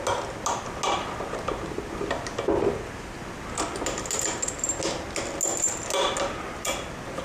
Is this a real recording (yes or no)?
yes